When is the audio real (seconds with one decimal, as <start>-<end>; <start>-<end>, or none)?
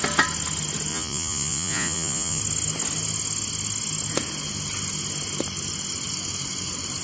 0.0-0.9; 2.4-7.0